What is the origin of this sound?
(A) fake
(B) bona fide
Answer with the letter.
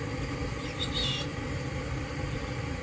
B